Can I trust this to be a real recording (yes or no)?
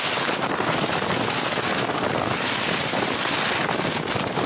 yes